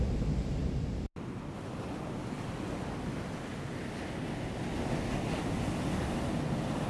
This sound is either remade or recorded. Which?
recorded